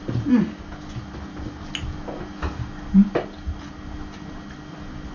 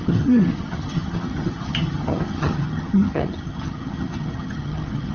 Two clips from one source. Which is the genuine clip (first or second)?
first